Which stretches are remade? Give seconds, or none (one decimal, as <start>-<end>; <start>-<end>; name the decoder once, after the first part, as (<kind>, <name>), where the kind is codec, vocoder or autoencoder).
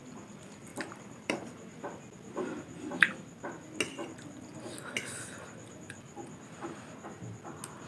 0.7-1.8 (vocoder, BigVGAN v2)